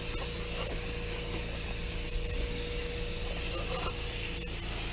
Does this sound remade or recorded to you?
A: recorded